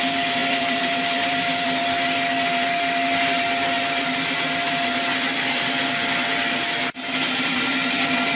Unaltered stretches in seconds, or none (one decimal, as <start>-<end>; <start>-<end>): 0.0-0.4; 1.8-8.4